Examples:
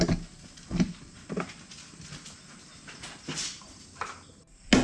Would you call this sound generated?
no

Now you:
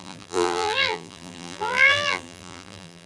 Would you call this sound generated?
yes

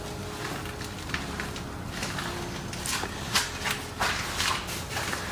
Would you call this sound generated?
no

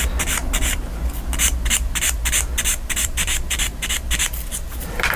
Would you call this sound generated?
yes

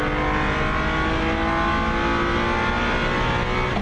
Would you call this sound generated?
no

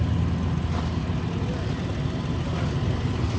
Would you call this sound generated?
no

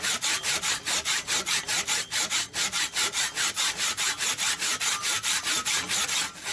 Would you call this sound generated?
no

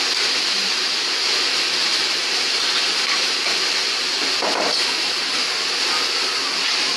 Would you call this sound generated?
yes